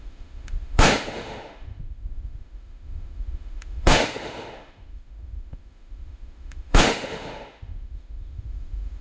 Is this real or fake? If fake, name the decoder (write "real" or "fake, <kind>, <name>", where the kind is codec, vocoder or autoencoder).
fake, autoencoder, DAC-VAE